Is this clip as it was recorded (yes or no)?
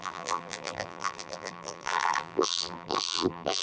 no